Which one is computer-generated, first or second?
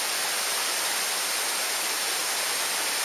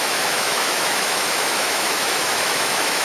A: second